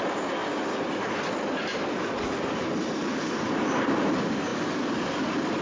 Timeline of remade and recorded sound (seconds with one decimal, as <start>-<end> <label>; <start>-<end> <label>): 0.0-5.6 remade